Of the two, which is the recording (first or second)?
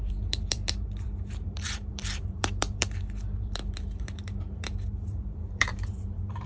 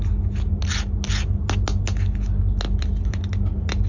second